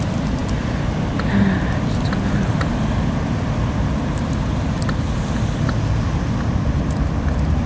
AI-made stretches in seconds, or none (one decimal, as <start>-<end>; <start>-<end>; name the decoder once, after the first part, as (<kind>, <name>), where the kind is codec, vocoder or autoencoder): none

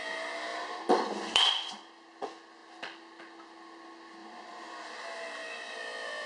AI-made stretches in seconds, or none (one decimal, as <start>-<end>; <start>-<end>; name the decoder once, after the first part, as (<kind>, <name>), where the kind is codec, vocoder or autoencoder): 0.5-1.7 (vocoder, BigVGAN v2); 4.2-4.8

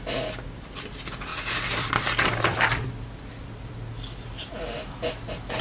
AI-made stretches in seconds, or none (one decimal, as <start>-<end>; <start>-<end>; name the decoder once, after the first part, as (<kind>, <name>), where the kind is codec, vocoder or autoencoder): 1.3-3.7 (vocoder, BigVGAN v2)

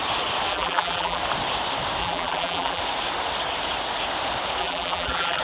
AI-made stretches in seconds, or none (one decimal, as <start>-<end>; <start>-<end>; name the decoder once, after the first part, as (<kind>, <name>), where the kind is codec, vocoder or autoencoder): 0.5-1.2 (vocoder, BigVGAN v2); 2.0-2.8; 4.6-5.4

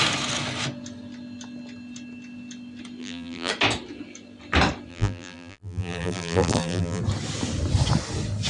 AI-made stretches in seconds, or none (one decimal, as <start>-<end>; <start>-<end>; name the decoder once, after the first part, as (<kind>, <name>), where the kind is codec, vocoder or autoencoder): 3.0-3.5 (vocoder, BigVGAN v2); 4.9-7.0